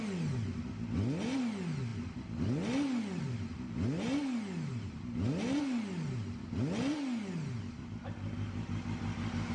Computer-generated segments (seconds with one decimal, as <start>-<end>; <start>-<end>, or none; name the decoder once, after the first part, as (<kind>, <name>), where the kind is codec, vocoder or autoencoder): none